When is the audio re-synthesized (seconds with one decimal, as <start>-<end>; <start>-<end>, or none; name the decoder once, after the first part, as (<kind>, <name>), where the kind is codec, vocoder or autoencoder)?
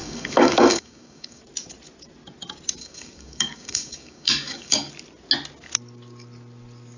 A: 0.0-1.4 (codec, DAC); 2.8-4.9